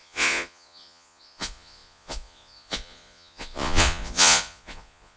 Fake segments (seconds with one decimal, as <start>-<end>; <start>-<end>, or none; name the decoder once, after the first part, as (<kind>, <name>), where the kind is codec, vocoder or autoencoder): 0.0-5.2 (vocoder, Vocos)